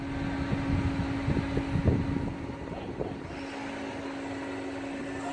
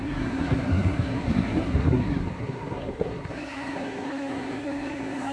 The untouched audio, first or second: first